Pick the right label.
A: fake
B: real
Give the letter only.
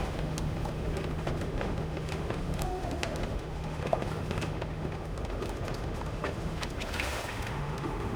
A